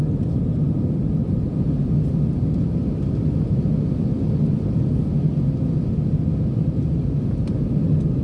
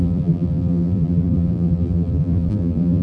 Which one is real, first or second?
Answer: first